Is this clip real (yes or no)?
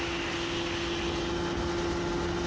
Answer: yes